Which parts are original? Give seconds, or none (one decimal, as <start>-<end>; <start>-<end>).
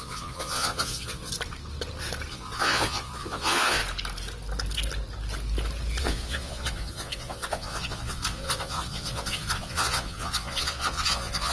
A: 1.3-2.3; 3.8-6.0